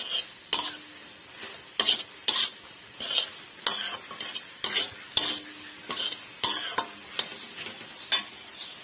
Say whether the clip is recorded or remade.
recorded